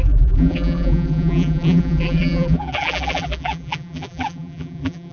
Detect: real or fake fake